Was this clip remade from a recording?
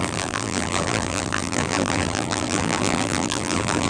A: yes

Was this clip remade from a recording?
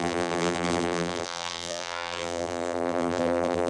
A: yes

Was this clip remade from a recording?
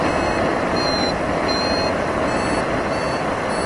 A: no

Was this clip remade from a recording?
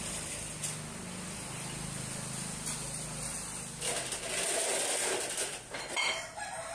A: no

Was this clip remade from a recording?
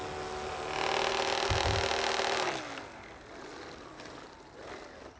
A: no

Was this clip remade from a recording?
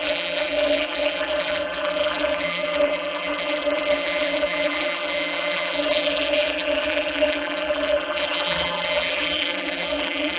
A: yes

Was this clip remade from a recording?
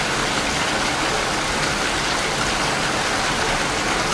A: no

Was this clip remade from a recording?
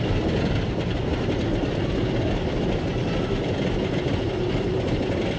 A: no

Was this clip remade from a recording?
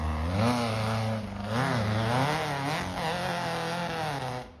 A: no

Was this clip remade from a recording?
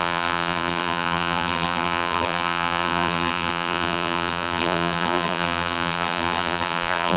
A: yes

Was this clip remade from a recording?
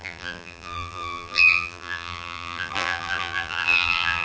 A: yes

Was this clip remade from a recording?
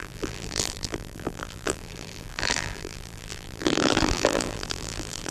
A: yes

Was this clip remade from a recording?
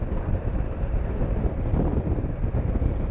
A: yes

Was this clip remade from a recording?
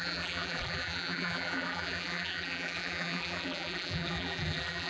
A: yes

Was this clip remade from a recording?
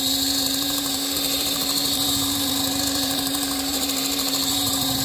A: yes